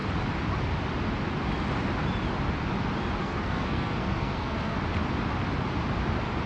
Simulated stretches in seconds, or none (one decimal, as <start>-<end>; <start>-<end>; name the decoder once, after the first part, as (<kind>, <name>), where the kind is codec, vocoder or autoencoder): 3.2-4.8 (codec, SNAC)